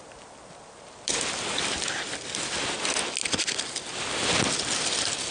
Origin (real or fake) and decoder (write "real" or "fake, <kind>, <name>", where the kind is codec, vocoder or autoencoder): real